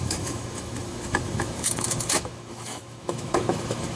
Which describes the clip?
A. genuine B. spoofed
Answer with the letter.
B